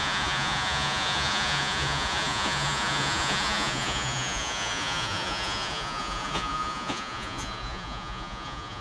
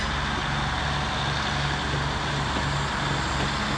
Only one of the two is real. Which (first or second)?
second